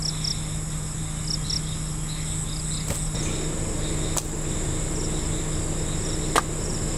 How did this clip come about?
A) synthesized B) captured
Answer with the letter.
B